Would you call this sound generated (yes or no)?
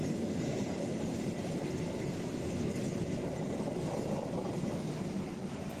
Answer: no